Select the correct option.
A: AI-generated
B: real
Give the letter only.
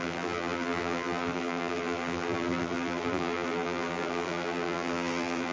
A